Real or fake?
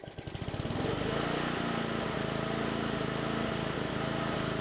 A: real